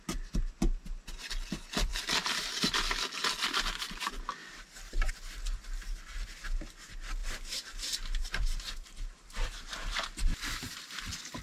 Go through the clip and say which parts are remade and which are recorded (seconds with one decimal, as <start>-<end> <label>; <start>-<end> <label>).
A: 0.0-1.9 recorded; 1.9-3.0 remade; 3.0-4.4 recorded; 4.4-5.1 remade; 5.1-7.2 recorded; 7.2-10.4 remade; 10.4-11.4 recorded